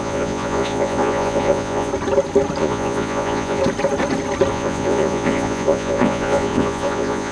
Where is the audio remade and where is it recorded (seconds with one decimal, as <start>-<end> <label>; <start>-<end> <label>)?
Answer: 0.0-1.9 remade; 1.9-2.6 recorded; 2.6-3.6 remade; 3.6-4.5 recorded; 4.5-7.3 remade